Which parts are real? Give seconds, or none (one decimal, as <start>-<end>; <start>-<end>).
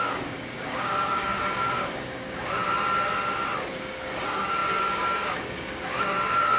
2.6-3.7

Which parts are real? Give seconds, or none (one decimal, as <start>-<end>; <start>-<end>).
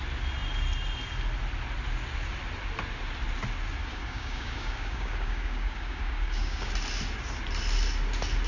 0.0-3.9; 6.7-8.5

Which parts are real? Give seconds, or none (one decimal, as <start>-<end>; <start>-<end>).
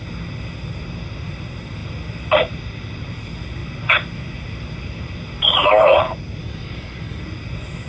0.0-6.4; 7.2-7.9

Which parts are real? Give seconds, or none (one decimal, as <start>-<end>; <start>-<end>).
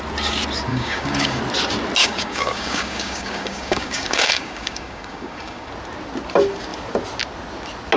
0.0-0.7; 1.4-2.0; 5.7-8.0